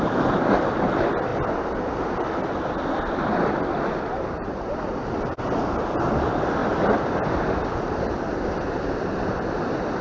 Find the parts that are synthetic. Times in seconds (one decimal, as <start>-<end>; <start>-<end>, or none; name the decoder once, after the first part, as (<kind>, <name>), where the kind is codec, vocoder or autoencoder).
none